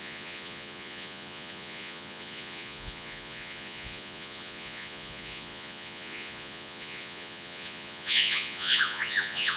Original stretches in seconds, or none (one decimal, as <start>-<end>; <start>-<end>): none